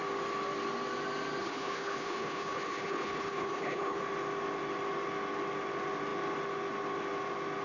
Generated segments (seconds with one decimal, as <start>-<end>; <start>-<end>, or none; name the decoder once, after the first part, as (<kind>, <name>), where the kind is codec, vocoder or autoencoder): 1.4-4.0 (codec, HILCodec)